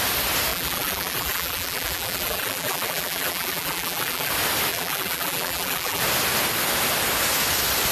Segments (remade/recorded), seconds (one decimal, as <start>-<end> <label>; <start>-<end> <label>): 0.0-0.5 recorded; 0.5-4.3 remade; 4.3-4.7 recorded; 4.7-6.0 remade; 6.0-7.9 recorded